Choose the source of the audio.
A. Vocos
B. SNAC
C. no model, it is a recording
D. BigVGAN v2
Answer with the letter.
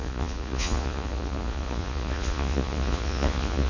A